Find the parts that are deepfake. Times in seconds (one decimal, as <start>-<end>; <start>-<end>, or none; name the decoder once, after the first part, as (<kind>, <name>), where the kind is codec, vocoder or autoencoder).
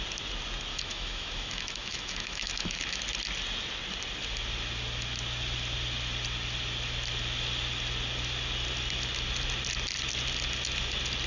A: 0.7-3.0 (autoencoder, DAC-VAE)